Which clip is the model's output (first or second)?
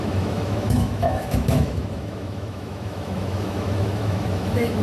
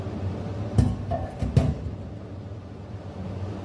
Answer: first